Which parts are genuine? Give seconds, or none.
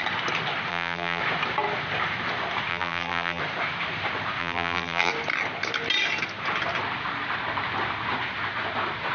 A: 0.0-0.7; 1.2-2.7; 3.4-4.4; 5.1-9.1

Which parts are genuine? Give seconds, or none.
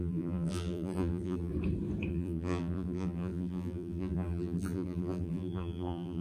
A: 1.5-2.1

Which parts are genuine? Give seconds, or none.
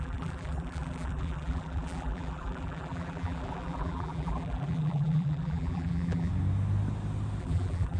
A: 6.3-7.4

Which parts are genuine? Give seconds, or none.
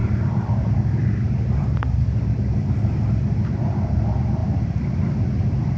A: 3.5-5.8